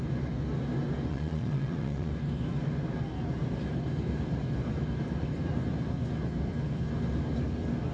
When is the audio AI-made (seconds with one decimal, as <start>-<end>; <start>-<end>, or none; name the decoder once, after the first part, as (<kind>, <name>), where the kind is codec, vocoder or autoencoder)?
1.1-2.1 (vocoder, Vocos)